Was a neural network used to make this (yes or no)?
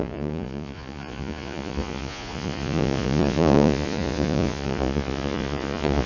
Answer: yes